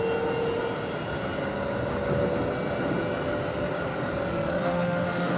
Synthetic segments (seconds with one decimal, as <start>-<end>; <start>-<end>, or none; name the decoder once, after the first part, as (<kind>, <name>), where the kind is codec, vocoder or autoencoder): 4.3-5.4 (autoencoder, DAC-VAE)